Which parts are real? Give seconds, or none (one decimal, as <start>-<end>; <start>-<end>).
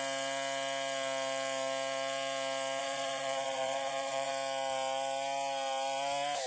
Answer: 0.0-2.8; 4.3-6.5